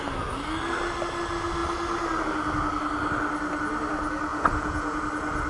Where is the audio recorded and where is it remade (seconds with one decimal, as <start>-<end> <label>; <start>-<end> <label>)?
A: 0.0-4.3 recorded; 4.3-5.0 remade; 5.0-5.5 recorded